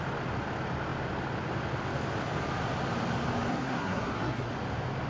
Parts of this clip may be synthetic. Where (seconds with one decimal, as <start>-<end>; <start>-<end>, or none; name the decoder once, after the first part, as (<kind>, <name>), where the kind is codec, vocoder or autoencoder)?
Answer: 3.5-4.5 (codec, SNAC)